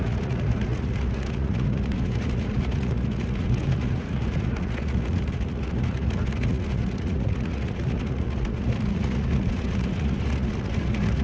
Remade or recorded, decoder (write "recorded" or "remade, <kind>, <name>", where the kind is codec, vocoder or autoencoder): remade, vocoder, Vocos